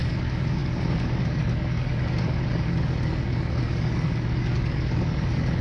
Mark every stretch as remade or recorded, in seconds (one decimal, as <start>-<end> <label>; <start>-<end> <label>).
0.0-5.6 remade